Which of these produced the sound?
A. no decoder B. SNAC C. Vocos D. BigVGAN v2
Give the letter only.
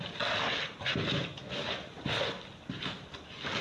A